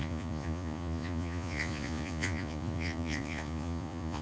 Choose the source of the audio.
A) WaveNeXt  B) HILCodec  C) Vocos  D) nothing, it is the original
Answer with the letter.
C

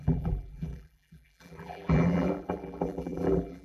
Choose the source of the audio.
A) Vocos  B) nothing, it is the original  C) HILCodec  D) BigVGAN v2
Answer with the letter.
D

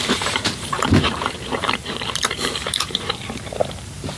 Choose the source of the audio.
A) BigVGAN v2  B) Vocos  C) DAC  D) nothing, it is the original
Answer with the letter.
A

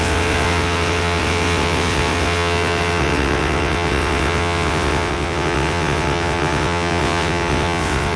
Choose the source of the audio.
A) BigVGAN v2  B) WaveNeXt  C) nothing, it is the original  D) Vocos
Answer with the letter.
B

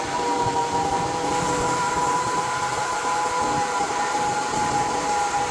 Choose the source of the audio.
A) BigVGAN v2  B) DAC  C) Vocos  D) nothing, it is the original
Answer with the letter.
A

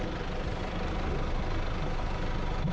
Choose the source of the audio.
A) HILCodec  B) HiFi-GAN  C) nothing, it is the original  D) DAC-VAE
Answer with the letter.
C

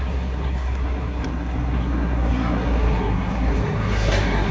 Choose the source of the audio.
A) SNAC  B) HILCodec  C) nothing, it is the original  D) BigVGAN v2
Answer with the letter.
A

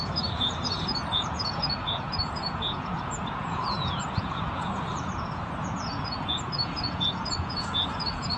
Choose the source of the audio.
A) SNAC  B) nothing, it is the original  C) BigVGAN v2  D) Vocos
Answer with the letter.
D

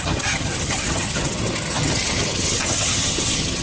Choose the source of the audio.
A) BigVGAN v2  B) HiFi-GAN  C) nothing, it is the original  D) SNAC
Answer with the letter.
B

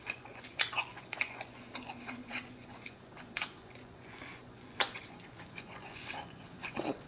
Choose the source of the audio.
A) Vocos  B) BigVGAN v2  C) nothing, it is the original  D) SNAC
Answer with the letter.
A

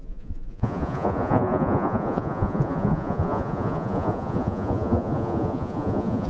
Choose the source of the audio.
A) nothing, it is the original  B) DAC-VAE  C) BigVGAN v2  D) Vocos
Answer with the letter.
D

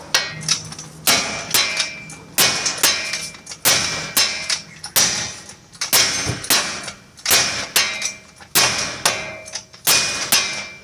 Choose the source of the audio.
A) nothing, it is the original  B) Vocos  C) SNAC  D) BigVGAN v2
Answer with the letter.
A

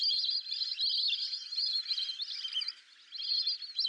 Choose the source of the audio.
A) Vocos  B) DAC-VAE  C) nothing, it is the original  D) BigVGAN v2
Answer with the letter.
C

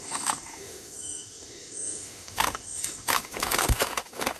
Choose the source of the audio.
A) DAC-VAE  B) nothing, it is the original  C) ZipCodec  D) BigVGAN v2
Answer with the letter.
A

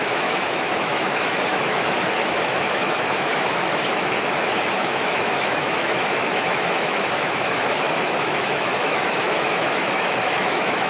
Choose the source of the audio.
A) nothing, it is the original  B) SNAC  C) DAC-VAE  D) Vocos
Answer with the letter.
C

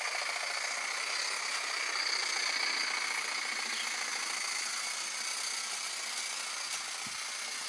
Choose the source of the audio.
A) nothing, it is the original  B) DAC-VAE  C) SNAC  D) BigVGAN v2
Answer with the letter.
A